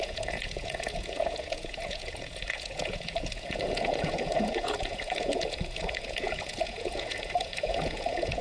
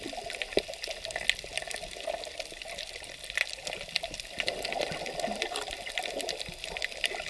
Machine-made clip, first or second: first